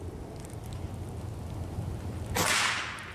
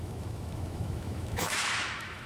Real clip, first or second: first